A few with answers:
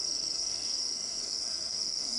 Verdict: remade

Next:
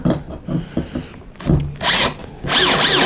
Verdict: recorded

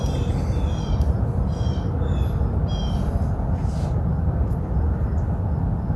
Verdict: recorded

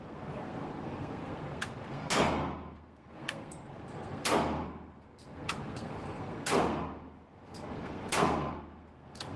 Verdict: remade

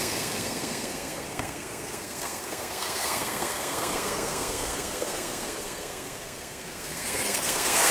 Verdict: remade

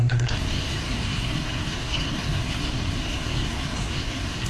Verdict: remade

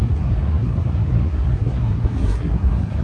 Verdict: remade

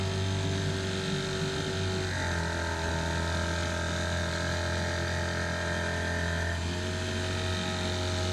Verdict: recorded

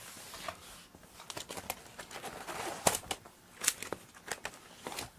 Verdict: recorded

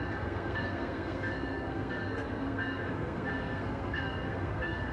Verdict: remade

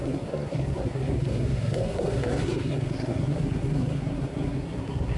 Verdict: remade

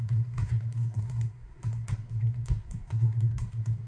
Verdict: remade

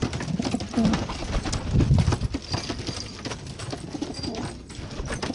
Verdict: recorded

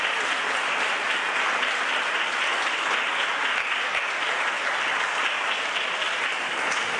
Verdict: recorded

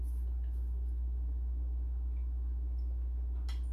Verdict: recorded